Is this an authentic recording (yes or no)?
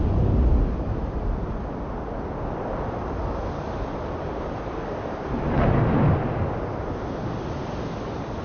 yes